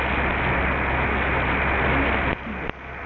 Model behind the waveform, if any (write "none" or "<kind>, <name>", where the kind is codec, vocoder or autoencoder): none